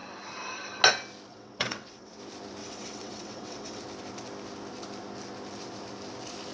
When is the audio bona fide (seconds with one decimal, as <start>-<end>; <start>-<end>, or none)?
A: 0.0-1.3; 2.2-2.6; 3.8-6.5